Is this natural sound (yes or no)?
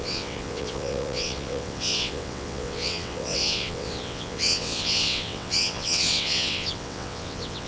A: no